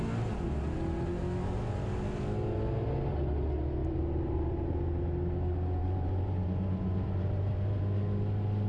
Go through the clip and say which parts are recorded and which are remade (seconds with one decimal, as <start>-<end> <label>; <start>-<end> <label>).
0.0-3.8 recorded; 3.8-4.8 remade; 4.8-5.8 recorded; 5.8-7.8 remade; 7.8-8.7 recorded